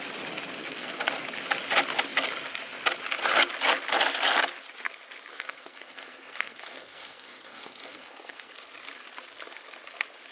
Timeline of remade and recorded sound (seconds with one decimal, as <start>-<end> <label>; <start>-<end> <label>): 0.0-0.6 recorded; 0.6-1.1 remade; 1.1-5.3 recorded; 5.3-8.5 remade; 8.5-10.3 recorded